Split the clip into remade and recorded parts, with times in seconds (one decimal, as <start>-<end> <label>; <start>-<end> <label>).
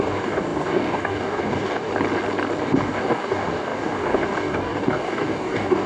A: 0.0-1.9 remade; 1.9-2.6 recorded; 2.6-5.9 remade